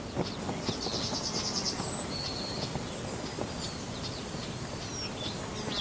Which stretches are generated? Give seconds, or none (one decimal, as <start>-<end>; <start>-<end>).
none